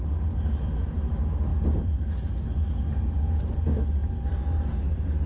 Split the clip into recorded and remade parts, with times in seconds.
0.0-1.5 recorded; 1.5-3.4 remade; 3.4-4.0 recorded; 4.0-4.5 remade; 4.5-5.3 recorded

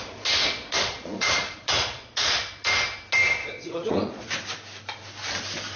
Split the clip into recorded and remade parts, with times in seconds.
0.0-0.4 recorded; 0.4-2.4 remade; 2.4-3.4 recorded; 3.4-4.3 remade; 4.3-5.8 recorded

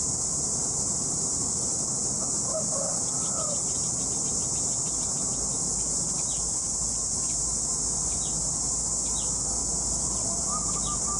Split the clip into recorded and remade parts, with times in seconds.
0.0-11.2 recorded

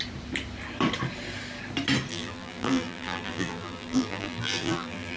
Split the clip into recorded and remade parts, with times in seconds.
0.0-2.1 recorded; 2.1-5.2 remade